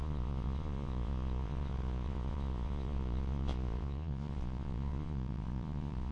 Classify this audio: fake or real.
fake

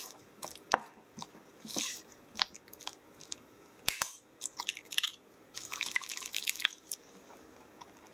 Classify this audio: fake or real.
fake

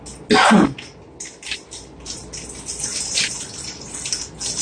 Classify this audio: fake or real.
real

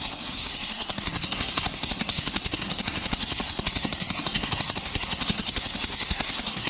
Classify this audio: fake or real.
fake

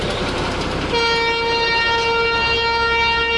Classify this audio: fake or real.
real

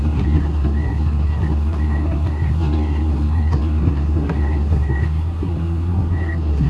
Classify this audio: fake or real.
fake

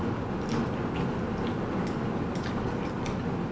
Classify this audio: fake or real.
real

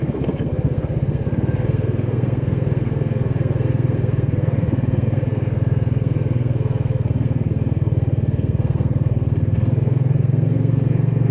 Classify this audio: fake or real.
fake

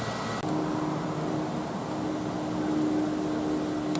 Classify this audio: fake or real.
real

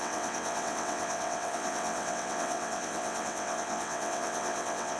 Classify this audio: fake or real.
fake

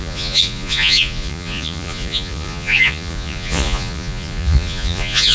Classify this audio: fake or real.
fake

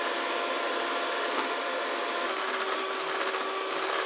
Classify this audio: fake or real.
real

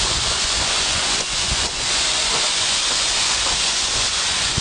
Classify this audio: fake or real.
fake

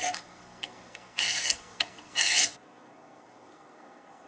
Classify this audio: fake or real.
fake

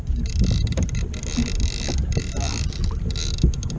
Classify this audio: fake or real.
real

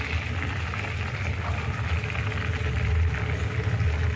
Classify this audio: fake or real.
real